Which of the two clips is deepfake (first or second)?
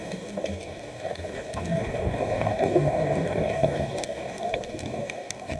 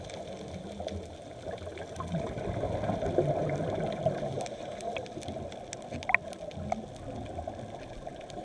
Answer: first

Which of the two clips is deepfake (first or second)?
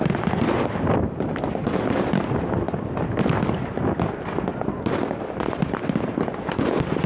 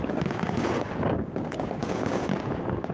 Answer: second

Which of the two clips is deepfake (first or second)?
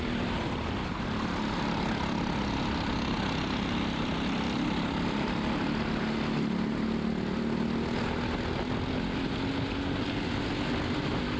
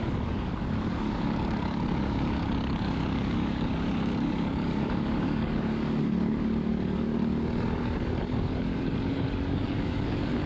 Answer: second